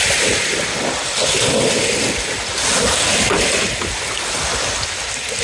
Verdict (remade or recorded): recorded